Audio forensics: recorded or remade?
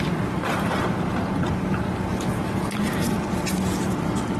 recorded